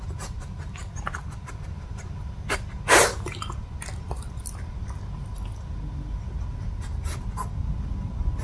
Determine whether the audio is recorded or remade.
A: recorded